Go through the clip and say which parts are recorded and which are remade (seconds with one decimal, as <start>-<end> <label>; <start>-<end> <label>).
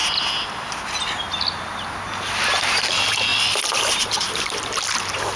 0.0-1.7 recorded; 1.7-3.3 remade; 3.3-4.0 recorded; 4.0-5.4 remade